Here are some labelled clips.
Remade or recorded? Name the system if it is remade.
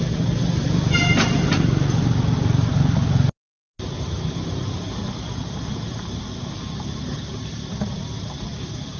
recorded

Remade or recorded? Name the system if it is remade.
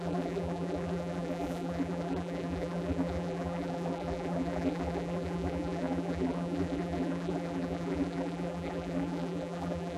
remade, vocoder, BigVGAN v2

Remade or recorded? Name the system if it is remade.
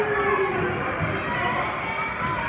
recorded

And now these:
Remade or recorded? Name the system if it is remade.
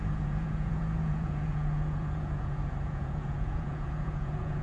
remade, vocoder, Vocos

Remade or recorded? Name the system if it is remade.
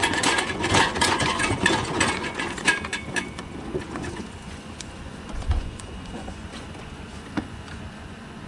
remade, vocoder, Vocos